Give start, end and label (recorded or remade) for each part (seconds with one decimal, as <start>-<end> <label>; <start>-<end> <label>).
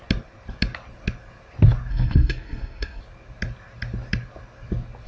0.0-1.9 recorded; 1.9-3.0 remade; 3.0-5.1 recorded